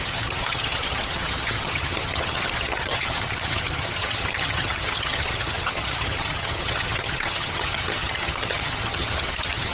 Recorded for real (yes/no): no